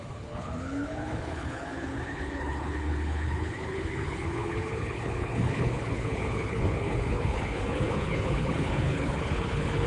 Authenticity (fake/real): fake